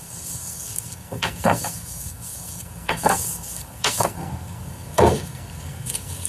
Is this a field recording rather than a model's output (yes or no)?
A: no